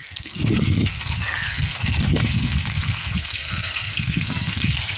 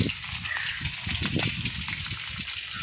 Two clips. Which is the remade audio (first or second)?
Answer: first